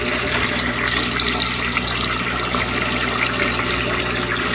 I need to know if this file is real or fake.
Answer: real